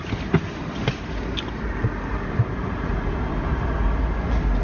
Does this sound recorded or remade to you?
recorded